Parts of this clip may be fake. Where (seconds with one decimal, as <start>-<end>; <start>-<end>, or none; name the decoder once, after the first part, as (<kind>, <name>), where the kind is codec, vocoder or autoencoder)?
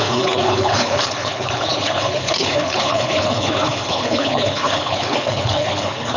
0.0-6.2 (codec, HILCodec)